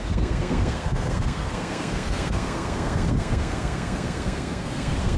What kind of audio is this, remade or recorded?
remade